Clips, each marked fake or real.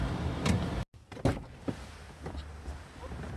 real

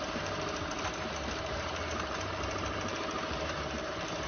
fake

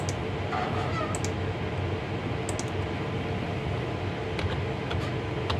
real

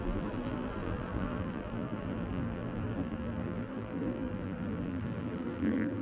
fake